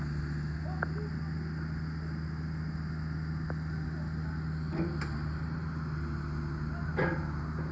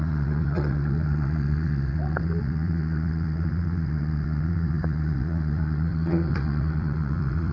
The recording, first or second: first